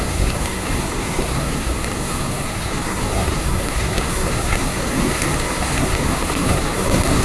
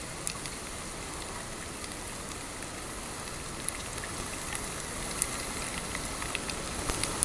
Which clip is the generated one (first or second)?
first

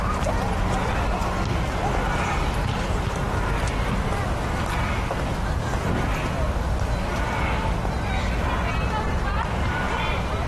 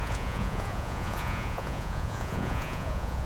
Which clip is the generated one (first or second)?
second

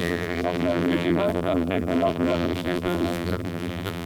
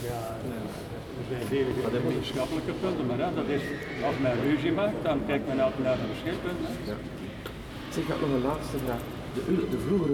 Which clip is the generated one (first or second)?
first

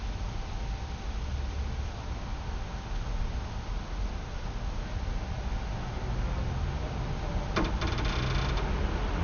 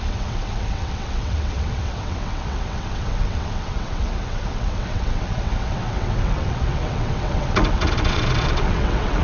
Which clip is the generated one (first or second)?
second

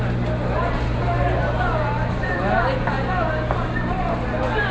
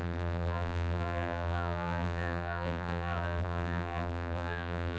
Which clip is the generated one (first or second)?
second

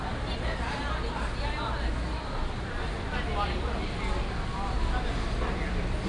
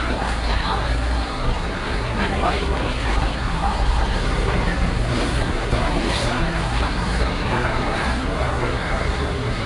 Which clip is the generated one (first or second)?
second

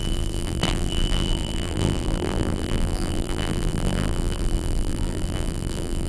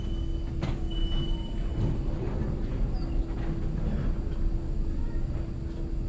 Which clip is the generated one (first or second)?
first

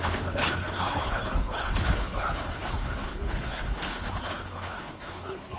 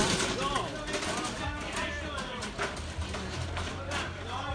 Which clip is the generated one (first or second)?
first